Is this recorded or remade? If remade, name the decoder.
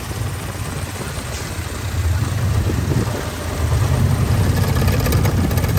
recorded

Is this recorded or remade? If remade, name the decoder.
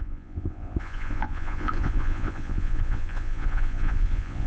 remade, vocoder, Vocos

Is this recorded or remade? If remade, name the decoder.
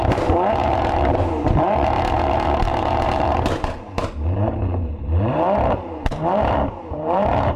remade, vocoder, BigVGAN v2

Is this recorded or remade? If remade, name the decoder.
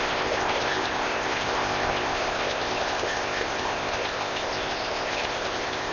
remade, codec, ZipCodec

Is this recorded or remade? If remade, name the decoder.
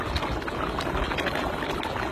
recorded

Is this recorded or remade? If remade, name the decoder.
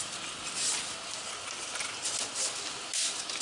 recorded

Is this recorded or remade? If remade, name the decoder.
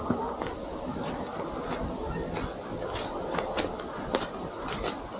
recorded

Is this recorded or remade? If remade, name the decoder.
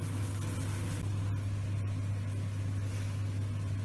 recorded